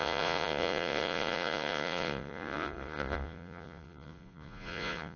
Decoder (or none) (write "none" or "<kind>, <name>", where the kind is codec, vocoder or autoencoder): vocoder, Vocos